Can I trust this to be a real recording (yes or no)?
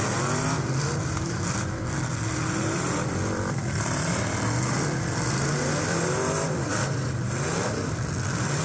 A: no